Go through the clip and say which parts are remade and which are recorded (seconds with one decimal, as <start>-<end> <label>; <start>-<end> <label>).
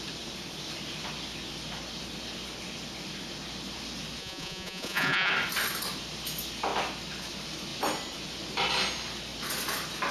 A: 0.0-4.2 recorded; 4.2-5.3 remade; 5.3-10.1 recorded